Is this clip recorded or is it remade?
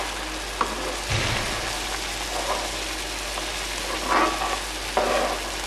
recorded